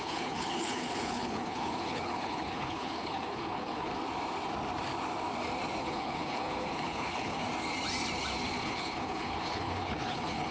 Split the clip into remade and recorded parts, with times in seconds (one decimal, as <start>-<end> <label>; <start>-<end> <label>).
0.0-3.9 remade; 3.9-5.8 recorded; 5.8-7.4 remade; 7.4-8.6 recorded; 8.6-10.5 remade